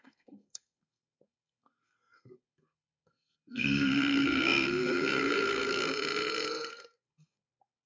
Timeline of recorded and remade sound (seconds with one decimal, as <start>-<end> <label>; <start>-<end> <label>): 0.0-5.9 remade; 5.9-6.7 recorded; 6.7-7.9 remade